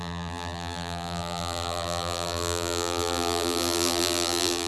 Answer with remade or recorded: remade